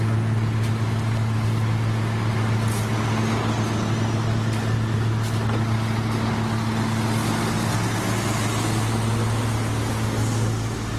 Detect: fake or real real